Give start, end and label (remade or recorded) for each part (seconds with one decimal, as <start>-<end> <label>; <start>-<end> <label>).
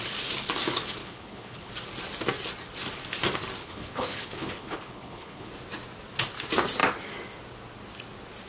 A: 0.0-1.0 recorded; 1.0-1.7 remade; 1.7-3.6 recorded; 3.6-5.5 remade; 5.5-8.5 recorded